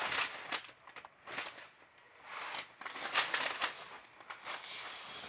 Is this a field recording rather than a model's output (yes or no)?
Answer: yes